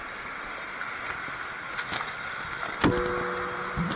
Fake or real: real